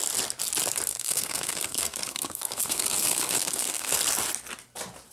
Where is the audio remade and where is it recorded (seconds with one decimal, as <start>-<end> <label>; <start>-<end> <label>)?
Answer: 0.0-0.9 recorded; 0.9-4.0 remade; 4.0-5.1 recorded

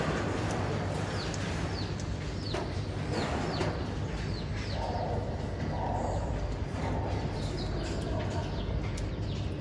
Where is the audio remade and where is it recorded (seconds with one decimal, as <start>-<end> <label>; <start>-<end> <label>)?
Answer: 0.0-9.6 recorded

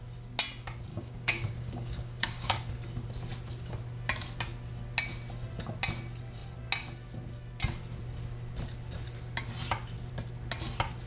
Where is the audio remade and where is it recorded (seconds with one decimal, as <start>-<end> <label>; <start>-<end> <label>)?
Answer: 0.0-0.9 recorded; 0.9-2.7 remade; 2.7-11.1 recorded

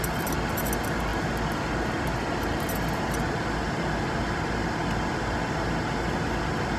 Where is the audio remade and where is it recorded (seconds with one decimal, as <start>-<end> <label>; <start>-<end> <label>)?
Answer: 0.0-6.8 recorded

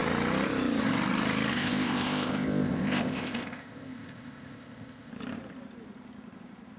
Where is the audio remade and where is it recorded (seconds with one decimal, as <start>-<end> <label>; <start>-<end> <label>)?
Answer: 0.0-1.5 recorded; 1.5-5.1 remade; 5.1-6.8 recorded